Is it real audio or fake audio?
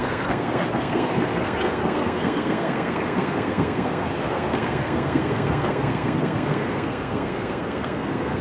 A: fake